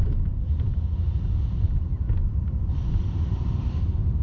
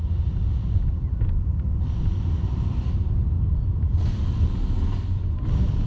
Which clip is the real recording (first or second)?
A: second